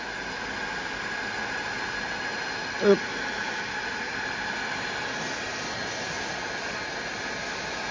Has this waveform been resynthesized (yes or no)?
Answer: no